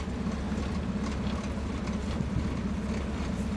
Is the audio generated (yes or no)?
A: no